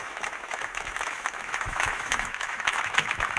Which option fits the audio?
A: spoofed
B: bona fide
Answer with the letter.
A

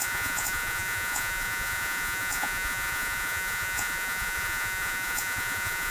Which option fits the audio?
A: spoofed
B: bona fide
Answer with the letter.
A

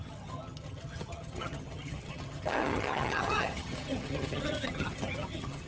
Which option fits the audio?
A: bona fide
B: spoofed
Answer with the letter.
B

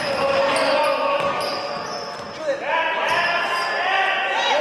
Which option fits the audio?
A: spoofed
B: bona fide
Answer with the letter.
B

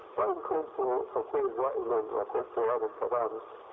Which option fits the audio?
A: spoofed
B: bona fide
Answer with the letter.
B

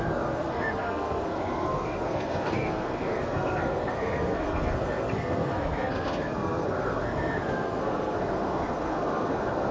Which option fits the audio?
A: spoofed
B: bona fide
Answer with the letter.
A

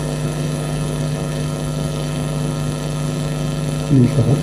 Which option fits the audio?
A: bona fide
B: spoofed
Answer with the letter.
B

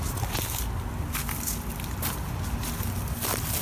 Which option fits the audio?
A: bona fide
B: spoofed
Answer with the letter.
A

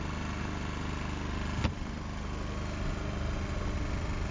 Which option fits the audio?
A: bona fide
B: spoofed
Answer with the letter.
A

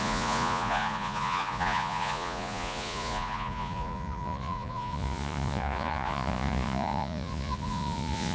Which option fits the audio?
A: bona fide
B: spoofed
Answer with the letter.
B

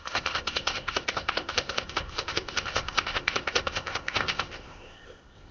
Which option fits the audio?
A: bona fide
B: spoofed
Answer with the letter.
B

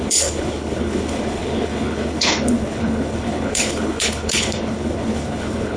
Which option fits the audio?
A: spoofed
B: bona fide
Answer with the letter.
A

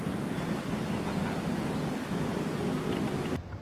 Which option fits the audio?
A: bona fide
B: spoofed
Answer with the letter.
A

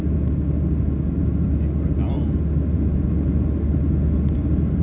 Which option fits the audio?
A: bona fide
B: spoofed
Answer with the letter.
A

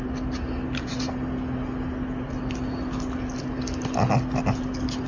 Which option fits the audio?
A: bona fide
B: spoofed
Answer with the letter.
A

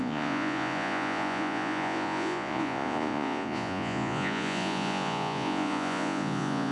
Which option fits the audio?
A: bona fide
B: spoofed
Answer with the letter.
B